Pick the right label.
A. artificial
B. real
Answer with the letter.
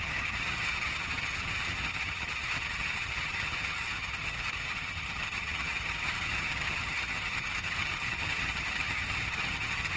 A